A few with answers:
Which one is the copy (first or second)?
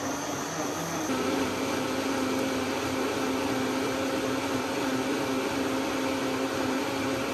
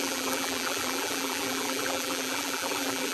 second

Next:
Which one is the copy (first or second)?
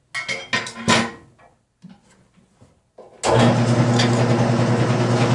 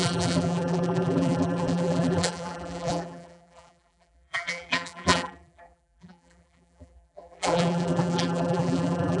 second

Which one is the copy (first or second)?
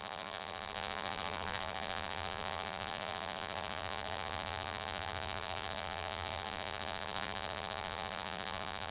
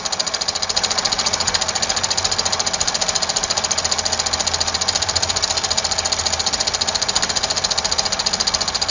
first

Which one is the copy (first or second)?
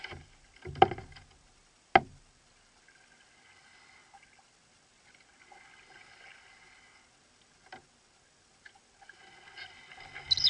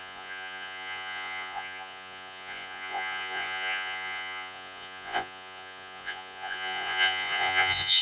second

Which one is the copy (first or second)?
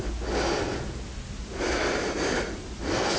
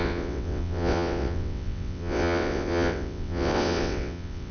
second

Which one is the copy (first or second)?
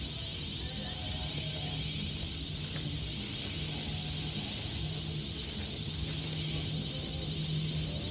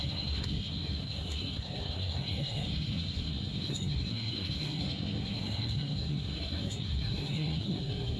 second